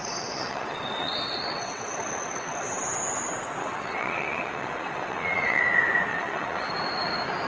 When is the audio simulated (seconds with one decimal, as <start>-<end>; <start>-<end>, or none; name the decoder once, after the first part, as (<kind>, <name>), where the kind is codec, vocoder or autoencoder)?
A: 0.0-2.8 (vocoder, WaveNeXt); 3.6-5.6; 6.1-6.7